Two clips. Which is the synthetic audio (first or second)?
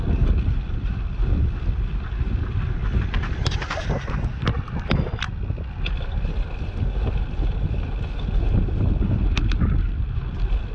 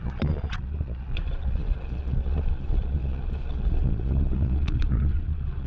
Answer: second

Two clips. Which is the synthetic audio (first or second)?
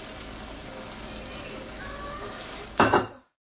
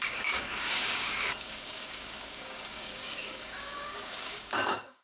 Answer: second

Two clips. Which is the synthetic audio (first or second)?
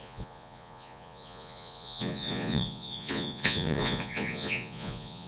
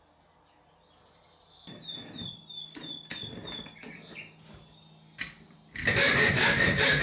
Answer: first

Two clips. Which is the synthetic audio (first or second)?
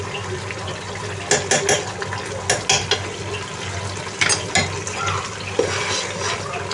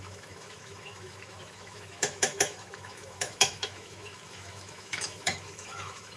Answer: second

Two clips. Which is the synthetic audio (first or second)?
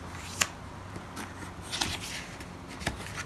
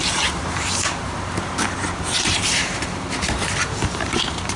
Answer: second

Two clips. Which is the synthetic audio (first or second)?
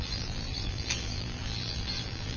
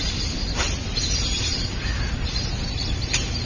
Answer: first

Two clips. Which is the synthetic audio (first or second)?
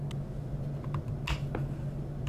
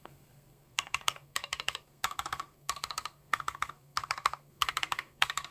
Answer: second